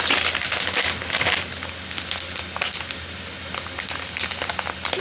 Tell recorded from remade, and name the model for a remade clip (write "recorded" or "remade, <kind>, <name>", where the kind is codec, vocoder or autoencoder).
recorded